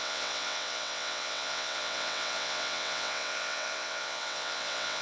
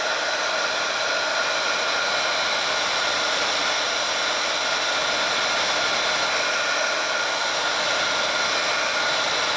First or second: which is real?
second